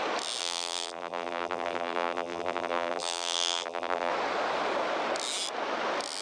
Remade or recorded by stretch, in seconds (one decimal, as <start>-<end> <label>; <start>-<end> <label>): 0.0-0.4 recorded; 0.4-4.1 remade; 4.1-6.2 recorded